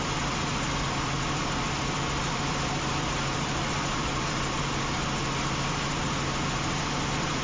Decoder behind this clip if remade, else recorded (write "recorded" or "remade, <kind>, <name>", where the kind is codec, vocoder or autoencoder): remade, vocoder, BigVGAN v2